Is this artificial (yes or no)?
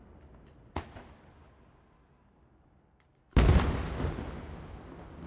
no